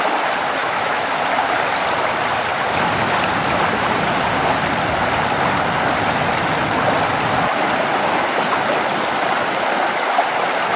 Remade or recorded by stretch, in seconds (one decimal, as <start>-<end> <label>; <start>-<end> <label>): 0.0-0.6 recorded; 0.6-1.2 remade; 1.2-10.8 recorded